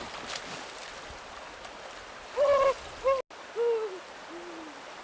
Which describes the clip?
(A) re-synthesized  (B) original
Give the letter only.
B